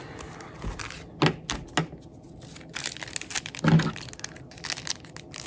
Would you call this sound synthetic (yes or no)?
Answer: no